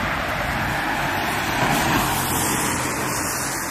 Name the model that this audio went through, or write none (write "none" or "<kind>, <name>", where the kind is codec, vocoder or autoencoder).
none